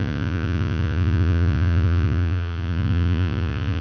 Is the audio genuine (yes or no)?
no